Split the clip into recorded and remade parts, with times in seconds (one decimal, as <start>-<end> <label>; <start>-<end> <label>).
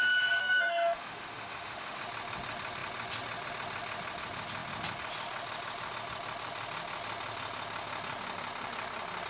0.0-0.4 recorded; 0.4-2.0 remade; 2.0-9.3 recorded